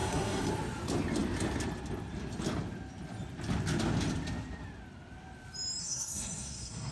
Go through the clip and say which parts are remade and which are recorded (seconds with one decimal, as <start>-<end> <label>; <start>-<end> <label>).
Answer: 0.0-0.5 remade; 0.5-5.8 recorded; 5.8-6.9 remade